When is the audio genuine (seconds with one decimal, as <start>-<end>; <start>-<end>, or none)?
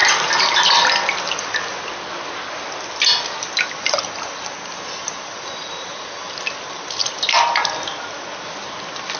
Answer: 0.0-9.2